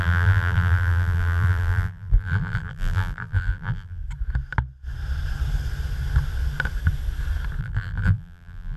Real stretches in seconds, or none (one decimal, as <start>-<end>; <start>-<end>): 4.0-7.6